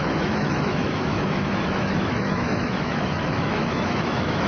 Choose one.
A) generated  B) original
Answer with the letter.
A